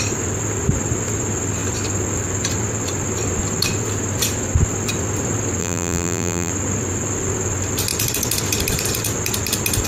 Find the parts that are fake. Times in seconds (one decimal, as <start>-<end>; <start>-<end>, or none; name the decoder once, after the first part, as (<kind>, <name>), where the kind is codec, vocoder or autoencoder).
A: 5.6-6.5 (vocoder, BigVGAN v2)